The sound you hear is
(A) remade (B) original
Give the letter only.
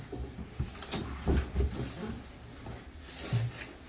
B